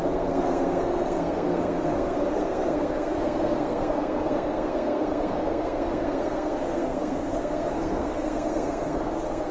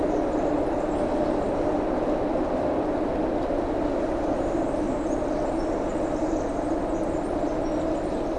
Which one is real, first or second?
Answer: second